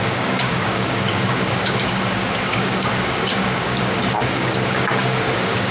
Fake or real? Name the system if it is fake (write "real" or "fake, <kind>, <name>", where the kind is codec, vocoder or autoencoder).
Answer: fake, codec, DAC